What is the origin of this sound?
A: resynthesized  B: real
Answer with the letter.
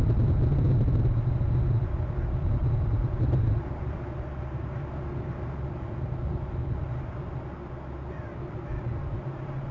B